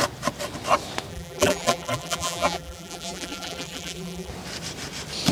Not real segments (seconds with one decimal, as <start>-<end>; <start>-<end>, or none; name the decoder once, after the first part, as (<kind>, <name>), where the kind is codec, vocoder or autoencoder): 1.1-4.3 (vocoder, BigVGAN v2)